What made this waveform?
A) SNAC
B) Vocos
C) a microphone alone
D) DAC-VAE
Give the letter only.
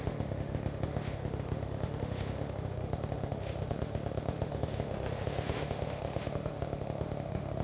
D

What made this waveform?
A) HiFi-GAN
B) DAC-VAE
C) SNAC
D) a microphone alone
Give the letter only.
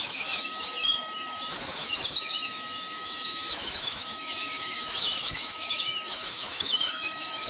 B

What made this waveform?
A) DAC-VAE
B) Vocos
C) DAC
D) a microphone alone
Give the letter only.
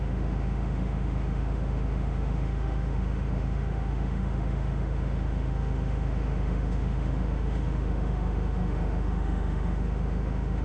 A